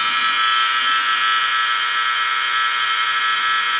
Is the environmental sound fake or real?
fake